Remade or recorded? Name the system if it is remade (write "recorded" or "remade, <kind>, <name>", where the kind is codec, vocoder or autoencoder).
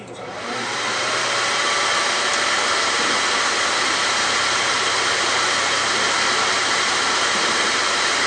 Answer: remade, vocoder, BigVGAN v2